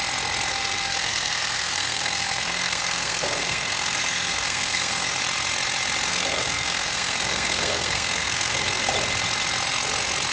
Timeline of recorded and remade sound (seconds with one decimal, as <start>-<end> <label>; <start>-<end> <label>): 0.0-0.5 recorded; 0.5-5.2 remade; 5.2-6.1 recorded; 6.1-8.9 remade; 8.9-10.3 recorded